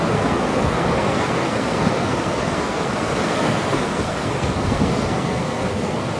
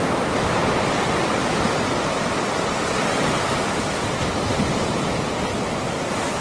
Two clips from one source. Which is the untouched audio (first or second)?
second